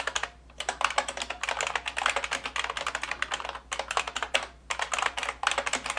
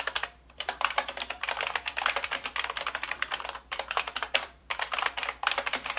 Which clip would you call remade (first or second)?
second